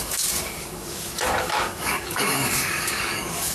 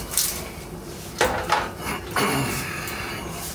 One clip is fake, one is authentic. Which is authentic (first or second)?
second